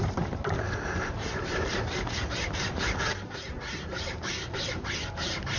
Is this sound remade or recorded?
remade